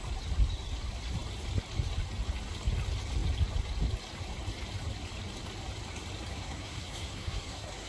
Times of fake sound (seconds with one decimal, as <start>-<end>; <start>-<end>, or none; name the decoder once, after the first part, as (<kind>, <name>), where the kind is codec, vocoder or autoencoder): 6.3-7.9 (codec, SNAC)